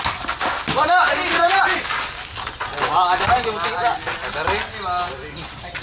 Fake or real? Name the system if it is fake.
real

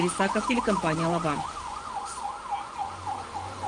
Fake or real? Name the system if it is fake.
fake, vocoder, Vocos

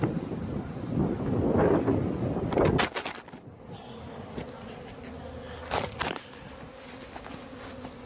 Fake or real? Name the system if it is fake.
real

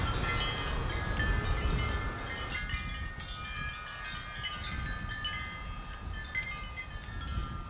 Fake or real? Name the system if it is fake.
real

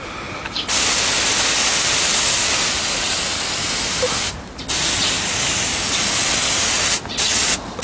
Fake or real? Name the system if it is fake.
real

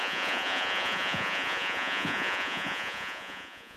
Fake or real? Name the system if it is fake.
fake, vocoder, Vocos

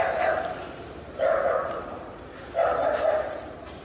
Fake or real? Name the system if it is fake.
fake, vocoder, BigVGAN v2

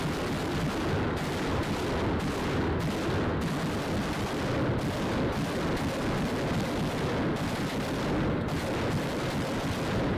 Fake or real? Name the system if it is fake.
real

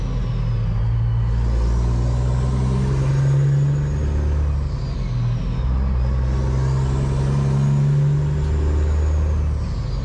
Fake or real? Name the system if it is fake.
real